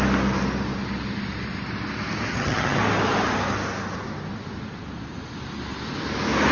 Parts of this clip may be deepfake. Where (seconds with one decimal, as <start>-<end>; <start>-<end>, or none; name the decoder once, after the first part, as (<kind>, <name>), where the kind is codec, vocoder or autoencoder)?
2.3-2.8 (vocoder, HiFi-GAN)

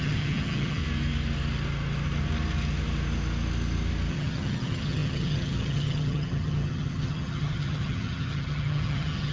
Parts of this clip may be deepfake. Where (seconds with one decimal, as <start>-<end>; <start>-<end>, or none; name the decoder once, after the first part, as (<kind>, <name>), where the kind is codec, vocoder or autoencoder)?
0.0-0.8 (vocoder, HiFi-GAN); 4.1-9.3

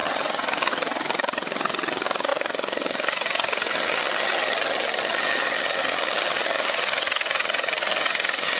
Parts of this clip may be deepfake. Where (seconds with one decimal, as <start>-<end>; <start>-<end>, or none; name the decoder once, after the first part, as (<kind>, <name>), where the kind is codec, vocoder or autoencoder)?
0.0-8.6 (vocoder, HiFi-GAN)

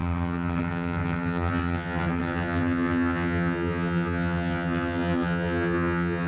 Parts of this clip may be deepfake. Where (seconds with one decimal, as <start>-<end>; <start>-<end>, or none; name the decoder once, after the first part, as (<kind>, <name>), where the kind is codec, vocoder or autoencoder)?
0.0-6.3 (vocoder, HiFi-GAN)

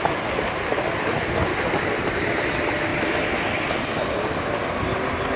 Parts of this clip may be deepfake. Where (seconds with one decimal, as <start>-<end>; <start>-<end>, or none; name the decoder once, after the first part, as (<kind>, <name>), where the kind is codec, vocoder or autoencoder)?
none

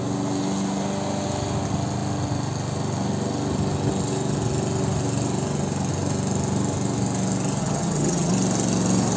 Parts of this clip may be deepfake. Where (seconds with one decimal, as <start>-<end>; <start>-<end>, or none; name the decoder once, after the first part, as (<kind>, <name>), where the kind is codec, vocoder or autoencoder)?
7.6-8.3 (vocoder, HiFi-GAN)

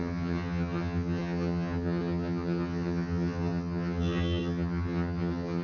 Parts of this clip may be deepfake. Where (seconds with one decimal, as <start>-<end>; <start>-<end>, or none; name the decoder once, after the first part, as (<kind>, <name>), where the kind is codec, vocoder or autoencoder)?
0.0-5.6 (vocoder, HiFi-GAN)

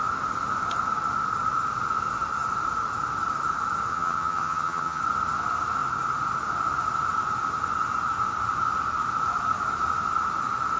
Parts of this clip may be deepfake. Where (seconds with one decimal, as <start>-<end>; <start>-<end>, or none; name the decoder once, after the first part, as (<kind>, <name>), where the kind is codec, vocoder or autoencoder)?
3.9-5.0 (vocoder, HiFi-GAN)